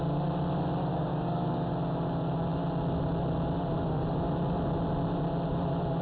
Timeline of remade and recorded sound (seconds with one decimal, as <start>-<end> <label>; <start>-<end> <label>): 0.0-0.9 recorded; 0.9-1.7 remade; 1.7-6.0 recorded